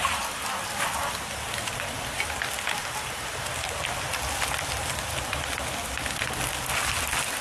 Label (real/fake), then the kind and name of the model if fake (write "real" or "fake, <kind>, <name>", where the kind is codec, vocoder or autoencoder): real